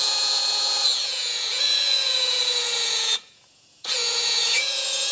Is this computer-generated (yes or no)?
yes